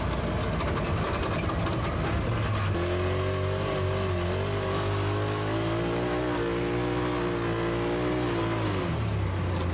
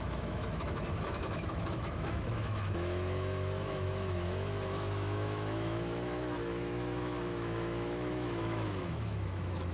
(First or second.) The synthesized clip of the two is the second